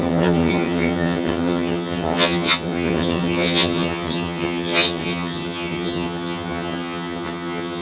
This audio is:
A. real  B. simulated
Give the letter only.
B